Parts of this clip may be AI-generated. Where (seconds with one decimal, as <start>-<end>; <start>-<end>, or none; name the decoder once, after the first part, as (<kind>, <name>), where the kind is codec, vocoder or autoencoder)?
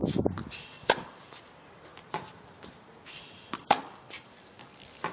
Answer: 1.9-3.8 (vocoder, BigVGAN v2)